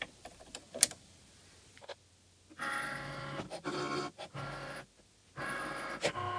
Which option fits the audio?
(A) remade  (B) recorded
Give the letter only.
B